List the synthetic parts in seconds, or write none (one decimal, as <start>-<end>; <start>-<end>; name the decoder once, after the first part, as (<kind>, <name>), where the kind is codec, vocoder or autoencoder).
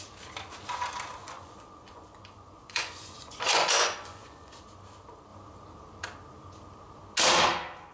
1.2-4.5 (vocoder, Vocos)